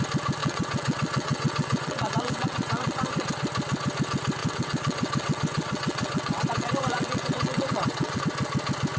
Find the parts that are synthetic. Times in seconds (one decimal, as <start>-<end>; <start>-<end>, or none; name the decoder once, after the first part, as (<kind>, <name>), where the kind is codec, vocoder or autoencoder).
0.4-3.3 (vocoder, WaveNeXt); 4.4-8.2